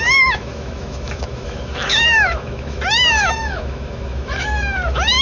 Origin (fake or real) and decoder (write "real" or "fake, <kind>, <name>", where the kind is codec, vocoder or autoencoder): fake, autoencoder, DAC-VAE